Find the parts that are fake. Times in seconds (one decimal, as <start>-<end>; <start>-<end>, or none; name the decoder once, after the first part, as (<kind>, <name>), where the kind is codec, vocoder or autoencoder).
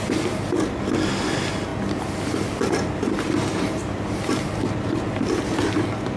none